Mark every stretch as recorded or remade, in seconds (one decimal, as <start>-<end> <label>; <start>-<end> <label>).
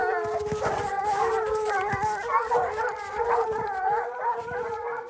0.0-2.5 recorded; 2.5-5.1 remade